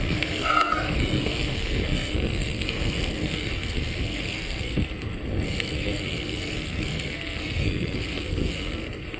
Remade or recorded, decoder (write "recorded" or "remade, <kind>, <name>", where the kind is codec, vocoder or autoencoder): remade, codec, SNAC